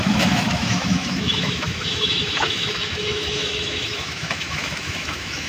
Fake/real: fake